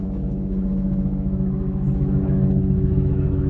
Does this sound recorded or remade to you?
remade